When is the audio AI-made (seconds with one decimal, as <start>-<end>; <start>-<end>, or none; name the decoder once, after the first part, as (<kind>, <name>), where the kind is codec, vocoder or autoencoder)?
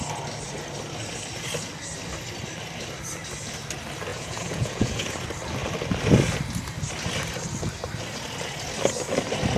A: 4.1-5.1 (vocoder, Vocos)